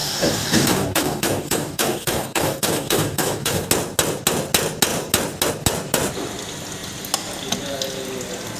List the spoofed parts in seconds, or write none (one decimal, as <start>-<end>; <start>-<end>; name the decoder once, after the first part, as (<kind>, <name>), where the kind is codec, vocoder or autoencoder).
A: 0.0-3.7 (codec, DAC)